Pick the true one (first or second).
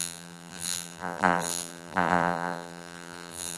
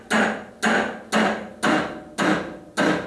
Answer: second